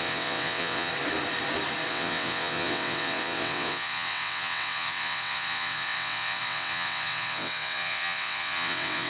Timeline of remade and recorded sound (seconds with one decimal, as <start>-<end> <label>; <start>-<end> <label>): 0.0-0.9 remade; 0.9-1.9 recorded; 1.9-9.1 remade